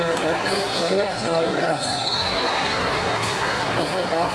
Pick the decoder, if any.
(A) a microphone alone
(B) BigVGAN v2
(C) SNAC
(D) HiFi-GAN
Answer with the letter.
C